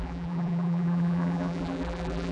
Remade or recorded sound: remade